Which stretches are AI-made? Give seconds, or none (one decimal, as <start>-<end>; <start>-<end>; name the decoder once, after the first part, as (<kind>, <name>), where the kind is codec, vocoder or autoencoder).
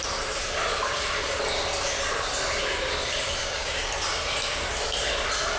3.4-3.9 (codec, DAC)